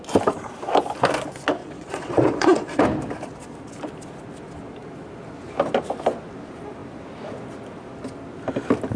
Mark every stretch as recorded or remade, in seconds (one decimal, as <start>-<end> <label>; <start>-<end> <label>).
0.0-1.6 recorded; 1.6-2.8 remade; 2.8-9.0 recorded